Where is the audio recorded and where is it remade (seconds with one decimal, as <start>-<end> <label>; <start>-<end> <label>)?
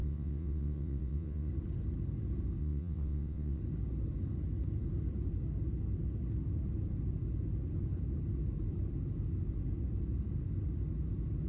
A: 0.0-1.5 remade; 1.5-2.6 recorded; 2.6-3.6 remade; 3.6-11.5 recorded